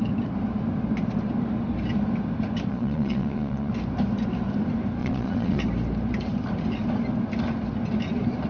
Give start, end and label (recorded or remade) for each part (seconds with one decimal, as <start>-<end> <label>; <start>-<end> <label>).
0.0-2.7 recorded; 2.7-3.7 remade; 3.7-5.0 recorded; 5.0-5.6 remade; 5.6-8.5 recorded